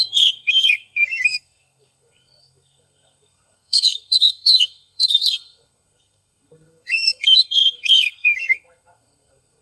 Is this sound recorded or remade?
remade